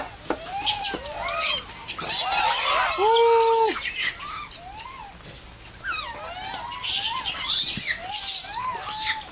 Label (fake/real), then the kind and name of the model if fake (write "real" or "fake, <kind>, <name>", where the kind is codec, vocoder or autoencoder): real